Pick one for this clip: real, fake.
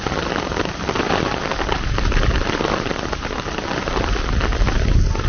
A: real